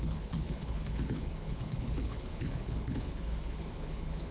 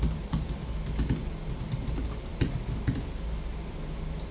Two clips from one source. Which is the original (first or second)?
second